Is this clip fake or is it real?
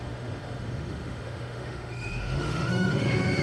fake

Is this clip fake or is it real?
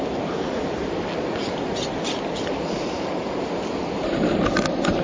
real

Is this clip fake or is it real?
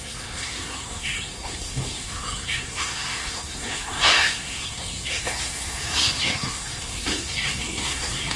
fake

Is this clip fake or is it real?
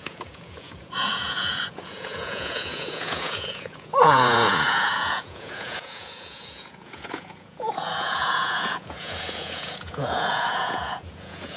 fake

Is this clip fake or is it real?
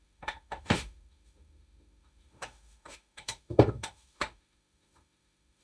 fake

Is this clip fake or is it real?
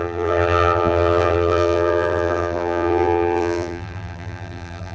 fake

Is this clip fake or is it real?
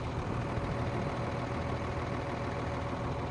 real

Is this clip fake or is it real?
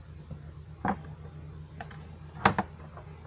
real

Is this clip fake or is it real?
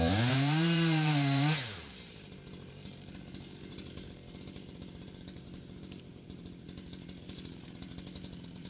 fake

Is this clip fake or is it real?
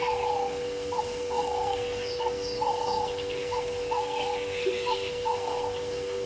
fake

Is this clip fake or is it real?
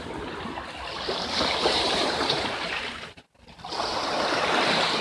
real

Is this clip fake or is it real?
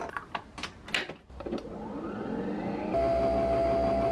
real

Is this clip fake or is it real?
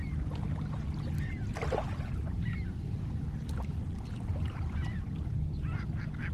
real